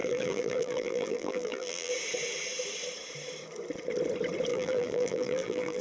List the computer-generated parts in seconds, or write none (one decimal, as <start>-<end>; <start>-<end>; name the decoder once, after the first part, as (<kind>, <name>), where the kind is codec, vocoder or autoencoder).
0.0-1.9 (vocoder, BigVGAN v2); 4.5-5.8